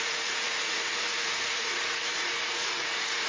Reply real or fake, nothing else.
fake